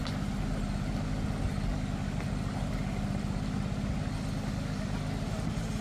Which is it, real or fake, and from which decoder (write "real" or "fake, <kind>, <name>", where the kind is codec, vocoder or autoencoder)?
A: real